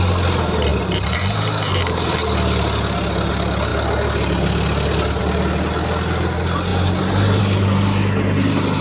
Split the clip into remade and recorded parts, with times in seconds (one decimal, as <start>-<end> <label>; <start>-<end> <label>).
0.0-8.8 recorded